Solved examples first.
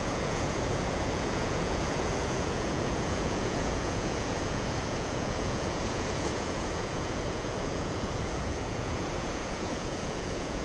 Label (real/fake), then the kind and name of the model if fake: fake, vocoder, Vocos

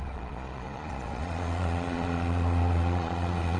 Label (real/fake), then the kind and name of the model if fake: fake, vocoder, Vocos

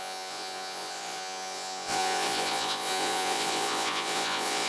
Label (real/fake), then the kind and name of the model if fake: fake, vocoder, Vocos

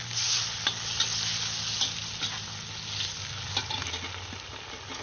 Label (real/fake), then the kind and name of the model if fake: real